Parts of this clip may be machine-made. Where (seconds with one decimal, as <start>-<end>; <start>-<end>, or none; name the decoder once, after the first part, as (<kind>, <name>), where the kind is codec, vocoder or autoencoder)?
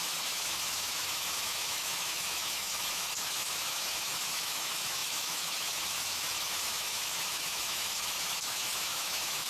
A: 0.0-9.5 (autoencoder, DAC-VAE)